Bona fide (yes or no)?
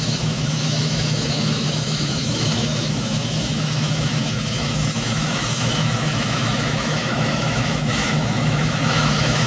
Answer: no